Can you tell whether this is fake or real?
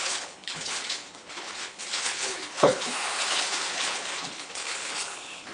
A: fake